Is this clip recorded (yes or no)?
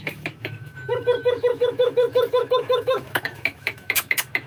no